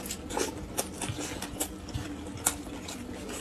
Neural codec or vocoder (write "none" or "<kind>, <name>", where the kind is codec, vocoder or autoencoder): none